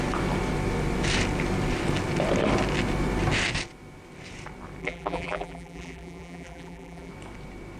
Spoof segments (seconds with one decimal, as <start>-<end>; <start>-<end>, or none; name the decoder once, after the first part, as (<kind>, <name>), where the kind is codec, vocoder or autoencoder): 4.8-7.1 (vocoder, BigVGAN v2)

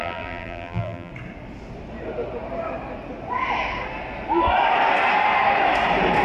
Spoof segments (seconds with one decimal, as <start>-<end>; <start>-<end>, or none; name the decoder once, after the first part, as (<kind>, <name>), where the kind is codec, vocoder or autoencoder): 0.0-1.1 (vocoder, BigVGAN v2)

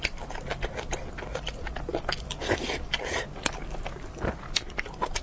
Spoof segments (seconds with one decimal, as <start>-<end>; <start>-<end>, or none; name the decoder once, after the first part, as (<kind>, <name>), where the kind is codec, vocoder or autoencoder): none

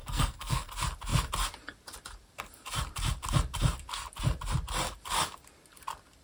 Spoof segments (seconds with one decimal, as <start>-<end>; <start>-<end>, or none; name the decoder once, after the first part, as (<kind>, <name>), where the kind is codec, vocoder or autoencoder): 0.0-0.7 (codec, SNAC)

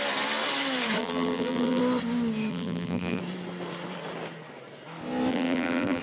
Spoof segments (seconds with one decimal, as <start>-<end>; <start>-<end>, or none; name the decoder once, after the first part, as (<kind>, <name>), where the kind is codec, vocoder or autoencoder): 1.0-1.8 (vocoder, BigVGAN v2); 2.5-3.2; 5.3-6.0